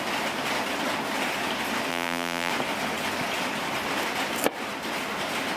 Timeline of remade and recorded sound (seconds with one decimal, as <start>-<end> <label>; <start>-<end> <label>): 0.0-1.9 recorded; 1.9-2.5 remade; 2.5-5.6 recorded